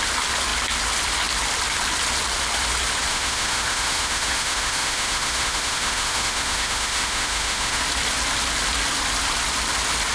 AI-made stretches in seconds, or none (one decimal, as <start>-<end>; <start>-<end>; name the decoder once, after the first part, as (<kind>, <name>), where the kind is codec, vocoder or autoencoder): 3.1-7.8 (autoencoder, DAC-VAE)